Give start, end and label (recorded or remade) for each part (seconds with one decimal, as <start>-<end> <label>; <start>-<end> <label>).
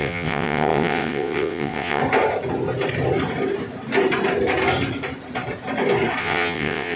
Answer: 0.0-2.0 remade; 2.0-6.2 recorded; 6.2-7.0 remade